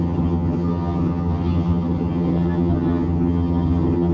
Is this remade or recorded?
remade